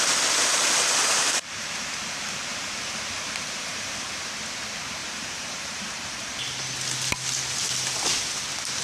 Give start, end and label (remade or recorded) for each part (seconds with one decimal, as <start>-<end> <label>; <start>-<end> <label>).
0.0-0.5 recorded; 0.5-4.3 remade; 4.3-5.0 recorded; 5.0-6.3 remade; 6.3-8.8 recorded